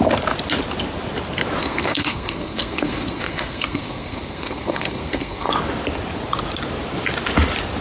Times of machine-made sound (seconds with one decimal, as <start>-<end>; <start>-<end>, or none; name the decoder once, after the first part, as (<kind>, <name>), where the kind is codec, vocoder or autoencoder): 1.6-5.5 (codec, SNAC)